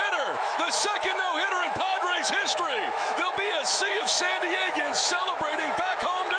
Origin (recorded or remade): remade